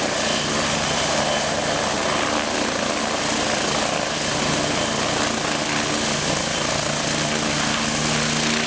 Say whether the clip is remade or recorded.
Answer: recorded